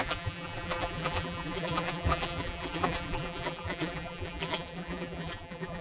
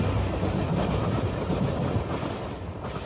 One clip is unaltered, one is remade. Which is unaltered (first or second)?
second